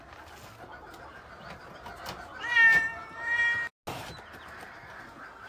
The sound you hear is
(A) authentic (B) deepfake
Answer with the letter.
A